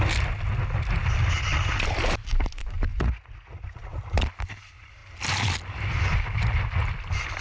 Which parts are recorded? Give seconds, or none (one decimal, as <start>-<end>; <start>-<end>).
0.0-2.9; 4.0-7.4